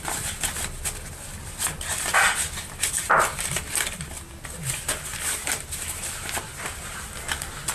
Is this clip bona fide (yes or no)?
yes